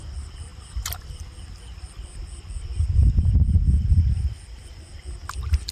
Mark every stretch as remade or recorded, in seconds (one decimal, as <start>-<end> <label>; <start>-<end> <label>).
0.0-5.7 recorded